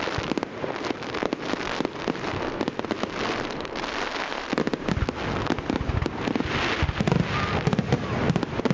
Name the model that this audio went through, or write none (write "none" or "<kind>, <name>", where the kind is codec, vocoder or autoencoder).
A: none